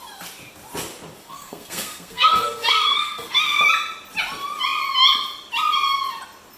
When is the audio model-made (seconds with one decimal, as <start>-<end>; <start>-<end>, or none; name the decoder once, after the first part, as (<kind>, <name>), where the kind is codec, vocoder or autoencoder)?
1.2-3.6 (codec, SNAC)